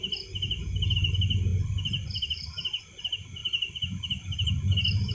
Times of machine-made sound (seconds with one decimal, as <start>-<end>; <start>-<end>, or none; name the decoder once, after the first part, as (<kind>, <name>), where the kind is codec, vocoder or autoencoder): 1.5-2.8 (vocoder, BigVGAN v2); 3.4-4.5